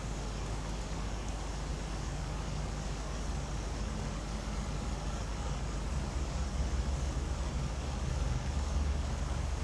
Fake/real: fake